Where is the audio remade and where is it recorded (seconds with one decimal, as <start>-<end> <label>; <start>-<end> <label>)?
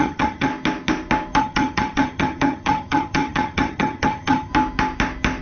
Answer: 0.0-0.5 remade; 0.5-1.4 recorded; 1.4-4.5 remade; 4.5-5.4 recorded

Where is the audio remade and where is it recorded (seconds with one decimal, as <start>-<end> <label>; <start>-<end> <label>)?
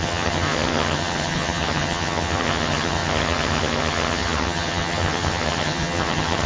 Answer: 0.0-6.5 remade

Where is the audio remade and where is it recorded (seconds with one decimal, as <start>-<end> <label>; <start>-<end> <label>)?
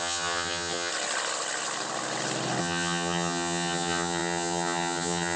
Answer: 0.0-0.9 remade; 0.9-2.6 recorded; 2.6-5.4 remade